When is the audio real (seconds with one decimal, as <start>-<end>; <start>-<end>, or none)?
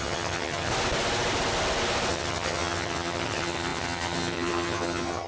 0.7-2.1